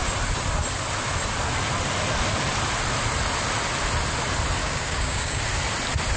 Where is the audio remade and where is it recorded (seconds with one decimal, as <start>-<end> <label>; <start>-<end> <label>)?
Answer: 0.0-4.6 recorded; 4.6-5.4 remade; 5.4-6.2 recorded